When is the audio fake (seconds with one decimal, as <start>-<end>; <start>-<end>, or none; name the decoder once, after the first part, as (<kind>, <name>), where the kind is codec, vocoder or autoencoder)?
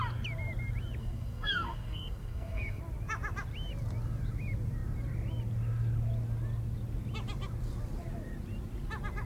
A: 1.0-2.8 (codec, SNAC)